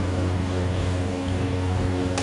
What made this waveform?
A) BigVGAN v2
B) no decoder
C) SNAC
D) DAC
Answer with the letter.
D